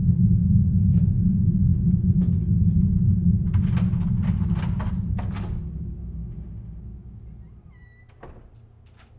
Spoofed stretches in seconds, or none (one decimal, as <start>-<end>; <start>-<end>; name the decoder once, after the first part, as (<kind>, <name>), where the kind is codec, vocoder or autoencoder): 6.0-6.8 (autoencoder, DAC-VAE)